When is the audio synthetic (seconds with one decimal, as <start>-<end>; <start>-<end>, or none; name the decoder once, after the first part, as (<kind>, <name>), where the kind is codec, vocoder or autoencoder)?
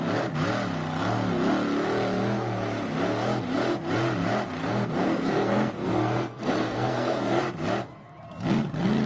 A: 4.6-7.4 (codec, SNAC)